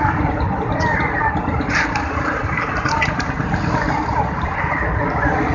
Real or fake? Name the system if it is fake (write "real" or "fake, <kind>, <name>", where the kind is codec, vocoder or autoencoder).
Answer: fake, vocoder, BigVGAN v2